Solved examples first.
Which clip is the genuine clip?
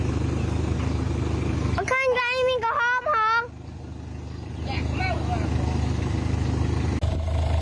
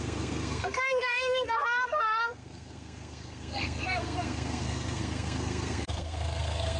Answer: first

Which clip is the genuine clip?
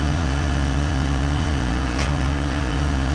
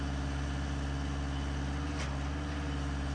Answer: second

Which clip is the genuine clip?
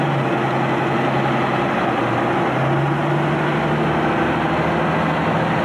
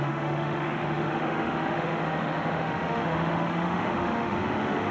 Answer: first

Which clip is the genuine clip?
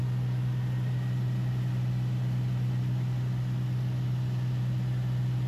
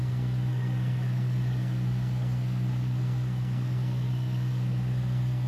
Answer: first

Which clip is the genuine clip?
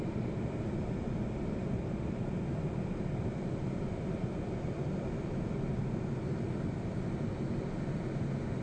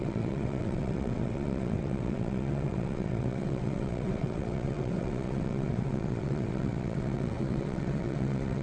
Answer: first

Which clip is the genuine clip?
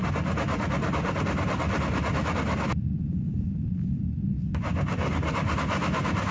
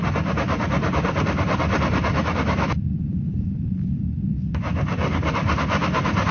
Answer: first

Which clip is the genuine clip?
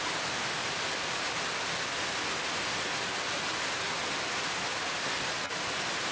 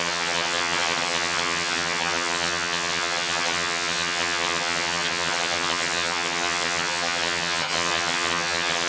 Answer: first